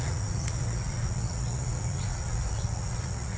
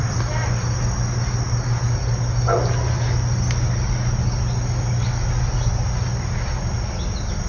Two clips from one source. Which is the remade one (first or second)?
first